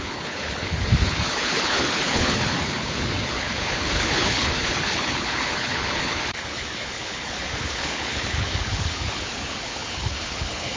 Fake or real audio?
fake